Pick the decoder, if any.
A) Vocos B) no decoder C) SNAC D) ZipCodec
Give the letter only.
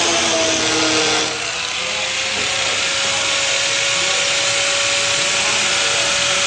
B